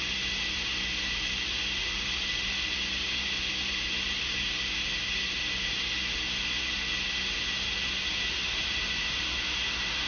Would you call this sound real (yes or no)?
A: yes